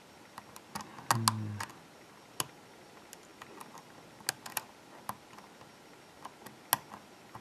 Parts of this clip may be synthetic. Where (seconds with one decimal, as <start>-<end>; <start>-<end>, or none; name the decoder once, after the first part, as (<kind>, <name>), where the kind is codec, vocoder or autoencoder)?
none